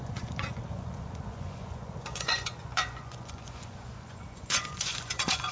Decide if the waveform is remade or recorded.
remade